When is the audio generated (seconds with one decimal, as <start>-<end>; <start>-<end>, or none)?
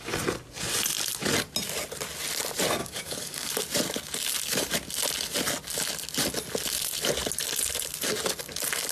2.8-3.5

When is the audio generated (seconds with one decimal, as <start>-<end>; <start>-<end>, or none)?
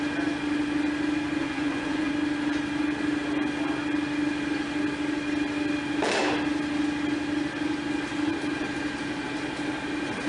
1.4-2.1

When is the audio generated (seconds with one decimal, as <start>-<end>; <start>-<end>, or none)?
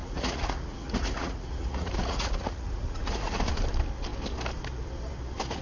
0.0-3.4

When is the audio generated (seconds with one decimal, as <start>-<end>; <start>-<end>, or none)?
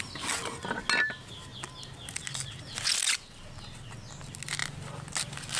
none